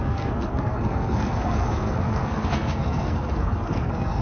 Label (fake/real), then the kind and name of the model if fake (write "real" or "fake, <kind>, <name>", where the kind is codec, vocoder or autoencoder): fake, codec, SNAC